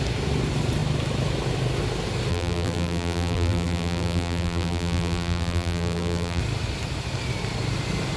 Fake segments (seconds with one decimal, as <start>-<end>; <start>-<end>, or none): 2.3-6.4